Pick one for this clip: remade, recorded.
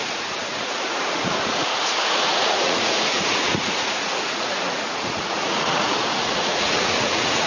remade